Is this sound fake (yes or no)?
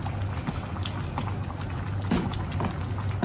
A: no